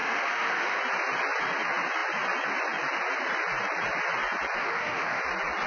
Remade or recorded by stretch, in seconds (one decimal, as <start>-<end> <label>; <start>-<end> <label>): 0.0-0.8 remade; 0.8-4.6 recorded; 4.6-5.2 remade; 5.2-5.7 recorded